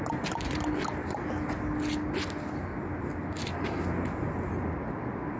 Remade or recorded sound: recorded